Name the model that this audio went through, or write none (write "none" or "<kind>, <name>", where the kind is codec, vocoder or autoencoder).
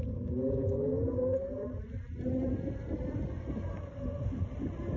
none